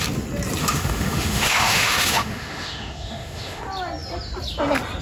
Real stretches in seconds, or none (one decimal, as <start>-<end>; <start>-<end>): 0.0-0.6; 3.6-5.0

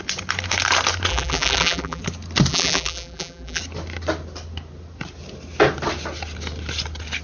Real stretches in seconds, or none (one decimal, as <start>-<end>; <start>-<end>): 0.0-1.1; 2.0-2.5; 3.6-7.2